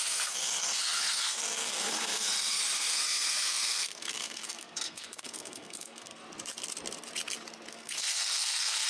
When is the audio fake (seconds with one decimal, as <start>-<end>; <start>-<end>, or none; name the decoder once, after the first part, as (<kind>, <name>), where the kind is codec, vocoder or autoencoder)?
0.0-6.2 (codec, SNAC); 7.7-8.9